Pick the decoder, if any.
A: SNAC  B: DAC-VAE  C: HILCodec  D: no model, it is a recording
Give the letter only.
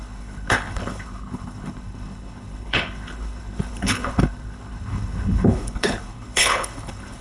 C